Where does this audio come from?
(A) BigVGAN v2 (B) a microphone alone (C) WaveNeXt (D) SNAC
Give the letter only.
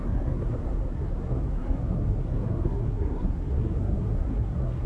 D